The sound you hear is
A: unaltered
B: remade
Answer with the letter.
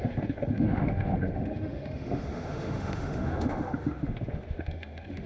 B